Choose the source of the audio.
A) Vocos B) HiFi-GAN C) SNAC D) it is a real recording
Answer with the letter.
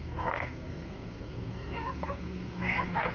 C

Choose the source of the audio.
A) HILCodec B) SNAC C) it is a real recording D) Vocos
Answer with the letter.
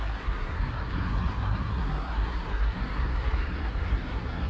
B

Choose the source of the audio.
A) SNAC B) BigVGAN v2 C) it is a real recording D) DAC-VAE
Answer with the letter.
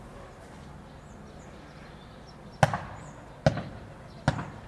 C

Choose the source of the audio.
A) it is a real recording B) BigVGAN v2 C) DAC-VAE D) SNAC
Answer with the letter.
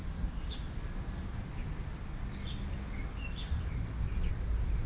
A